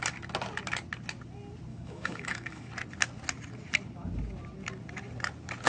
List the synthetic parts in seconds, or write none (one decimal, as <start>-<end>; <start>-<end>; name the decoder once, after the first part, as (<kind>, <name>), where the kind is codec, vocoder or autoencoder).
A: 1.7-2.7 (autoencoder, DAC-VAE)